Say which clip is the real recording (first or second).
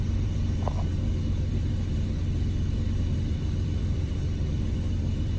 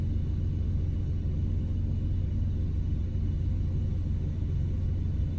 second